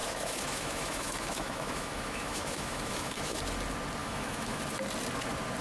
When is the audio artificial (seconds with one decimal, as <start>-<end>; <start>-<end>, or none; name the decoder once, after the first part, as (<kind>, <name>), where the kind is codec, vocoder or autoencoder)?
0.0-3.4 (autoencoder, DAC-VAE); 4.0-4.6